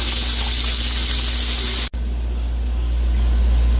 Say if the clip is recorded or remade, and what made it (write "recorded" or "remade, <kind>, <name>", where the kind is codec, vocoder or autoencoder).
recorded